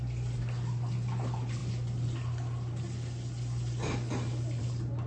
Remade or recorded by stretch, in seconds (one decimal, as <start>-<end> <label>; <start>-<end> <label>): 0.0-5.1 recorded